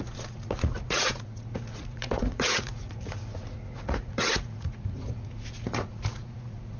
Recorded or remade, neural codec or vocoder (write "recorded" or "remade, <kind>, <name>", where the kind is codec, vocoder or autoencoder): remade, vocoder, Vocos